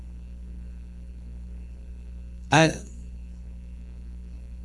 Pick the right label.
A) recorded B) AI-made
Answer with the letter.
B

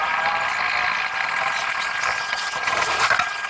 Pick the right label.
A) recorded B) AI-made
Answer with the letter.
A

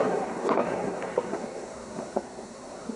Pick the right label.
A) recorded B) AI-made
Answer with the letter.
B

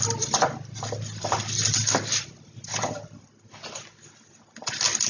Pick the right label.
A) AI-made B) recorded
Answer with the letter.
B